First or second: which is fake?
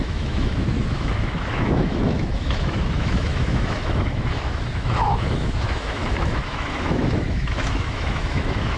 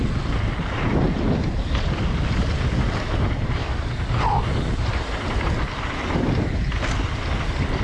first